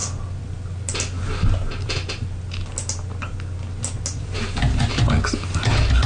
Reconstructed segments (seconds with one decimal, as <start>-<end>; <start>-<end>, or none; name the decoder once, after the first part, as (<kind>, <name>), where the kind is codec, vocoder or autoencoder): none